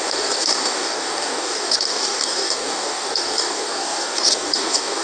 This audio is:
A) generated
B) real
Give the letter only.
A